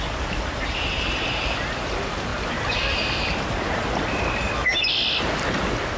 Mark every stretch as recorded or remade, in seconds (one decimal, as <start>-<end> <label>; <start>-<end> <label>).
0.0-2.3 remade; 2.3-6.0 recorded